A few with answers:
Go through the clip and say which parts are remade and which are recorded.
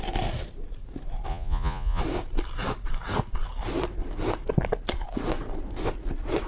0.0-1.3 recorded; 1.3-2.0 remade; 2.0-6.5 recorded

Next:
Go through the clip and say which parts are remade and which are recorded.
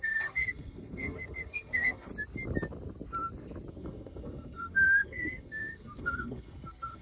0.0-2.1 remade; 2.1-3.7 recorded; 3.7-7.0 remade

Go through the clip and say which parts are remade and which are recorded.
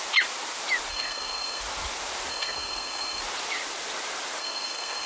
0.0-0.9 recorded; 0.9-1.6 remade; 1.6-2.3 recorded; 2.3-3.2 remade; 3.2-4.4 recorded; 4.4-5.1 remade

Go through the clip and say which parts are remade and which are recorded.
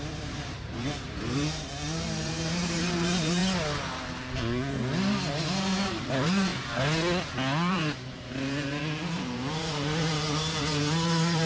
0.0-3.4 remade; 3.4-5.3 recorded; 5.3-6.5 remade; 6.5-7.7 recorded; 7.7-11.5 remade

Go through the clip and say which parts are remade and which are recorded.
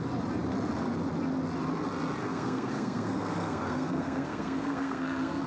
0.0-2.2 recorded; 2.2-5.5 remade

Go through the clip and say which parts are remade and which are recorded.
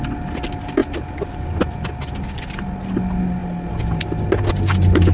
0.0-5.1 recorded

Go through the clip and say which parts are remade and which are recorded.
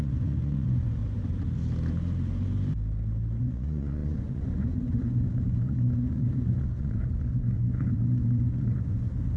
0.0-1.0 remade; 1.0-3.4 recorded; 3.4-9.4 remade